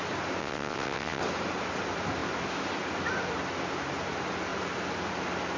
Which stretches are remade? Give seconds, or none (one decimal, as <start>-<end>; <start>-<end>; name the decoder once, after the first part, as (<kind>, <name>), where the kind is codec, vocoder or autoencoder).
0.4-1.2 (vocoder, WaveNeXt)

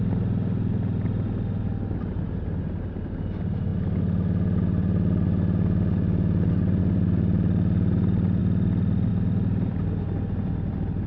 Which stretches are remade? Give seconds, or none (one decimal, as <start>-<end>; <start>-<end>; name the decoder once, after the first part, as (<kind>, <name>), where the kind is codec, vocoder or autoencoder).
none

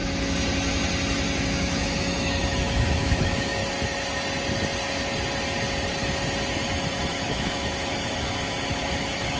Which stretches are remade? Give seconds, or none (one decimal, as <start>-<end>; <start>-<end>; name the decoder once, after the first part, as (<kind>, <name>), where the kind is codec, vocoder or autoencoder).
1.4-3.6 (autoencoder, DAC-VAE); 7.1-9.4

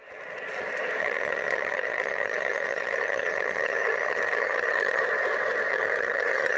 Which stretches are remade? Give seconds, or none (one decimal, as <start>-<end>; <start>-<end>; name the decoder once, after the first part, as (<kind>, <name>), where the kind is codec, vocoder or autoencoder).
1.0-5.0 (vocoder, HiFi-GAN); 5.7-6.6

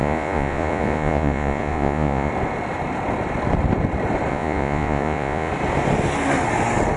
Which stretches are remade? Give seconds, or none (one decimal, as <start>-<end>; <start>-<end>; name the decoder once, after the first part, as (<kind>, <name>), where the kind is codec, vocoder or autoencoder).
0.0-2.3 (vocoder, Vocos); 4.3-5.5

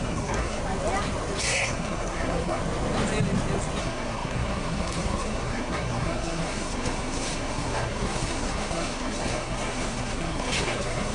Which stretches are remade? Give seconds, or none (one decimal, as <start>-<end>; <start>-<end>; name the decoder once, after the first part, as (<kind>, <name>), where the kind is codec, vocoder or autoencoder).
0.0-0.6 (codec, SNAC); 1.4-2.6; 3.8-11.1